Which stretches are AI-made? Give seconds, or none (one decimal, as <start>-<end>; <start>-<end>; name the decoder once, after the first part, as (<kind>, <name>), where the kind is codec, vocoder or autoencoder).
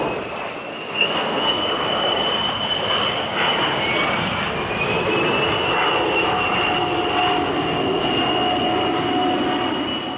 0.7-1.7 (codec, SNAC)